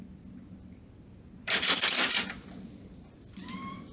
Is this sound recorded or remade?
recorded